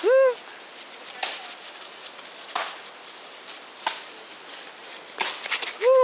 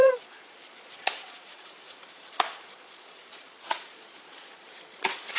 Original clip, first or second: first